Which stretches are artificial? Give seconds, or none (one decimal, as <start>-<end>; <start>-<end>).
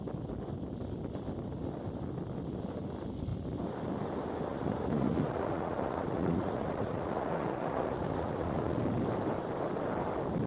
4.5-8.8